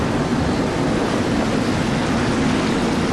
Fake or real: real